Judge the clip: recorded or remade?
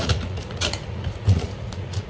remade